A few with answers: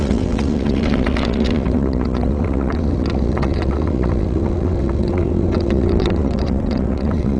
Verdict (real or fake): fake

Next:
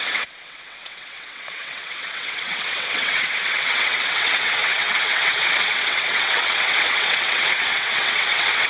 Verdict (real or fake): fake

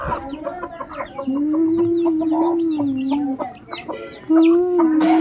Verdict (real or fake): real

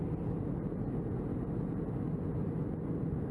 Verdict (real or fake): real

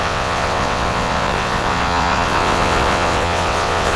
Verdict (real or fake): fake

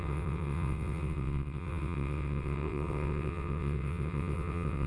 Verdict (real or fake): fake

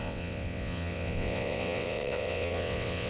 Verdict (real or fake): fake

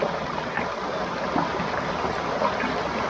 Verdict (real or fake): real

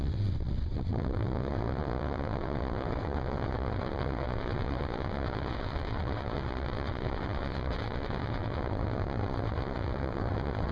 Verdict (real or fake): fake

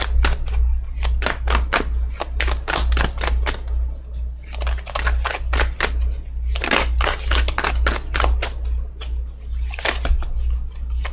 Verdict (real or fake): real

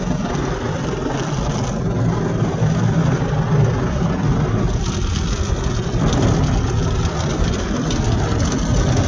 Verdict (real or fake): real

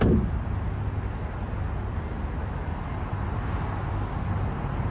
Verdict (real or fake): real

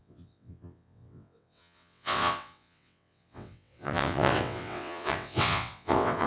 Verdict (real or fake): fake